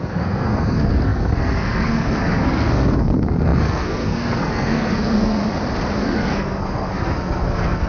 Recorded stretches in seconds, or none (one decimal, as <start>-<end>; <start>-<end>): 5.4-6.0